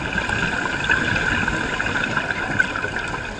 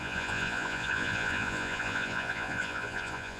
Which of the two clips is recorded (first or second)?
first